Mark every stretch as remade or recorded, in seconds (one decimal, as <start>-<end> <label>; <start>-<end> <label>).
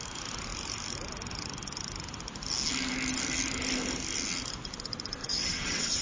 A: 0.0-5.2 recorded; 5.2-6.0 remade